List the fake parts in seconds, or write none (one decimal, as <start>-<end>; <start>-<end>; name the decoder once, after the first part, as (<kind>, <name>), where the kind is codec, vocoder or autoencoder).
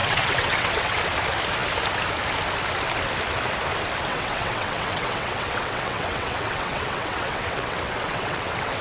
0.0-1.0 (vocoder, WaveNeXt); 4.1-8.8